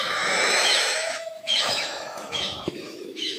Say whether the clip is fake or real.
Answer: fake